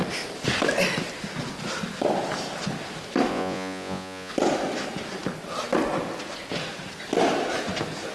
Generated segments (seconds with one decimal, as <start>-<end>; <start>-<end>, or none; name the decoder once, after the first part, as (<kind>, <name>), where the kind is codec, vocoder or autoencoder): 3.3-4.3 (vocoder, Vocos)